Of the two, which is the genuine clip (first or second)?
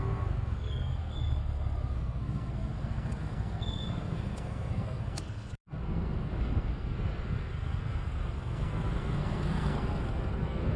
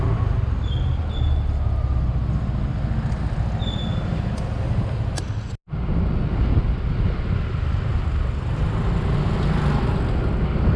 second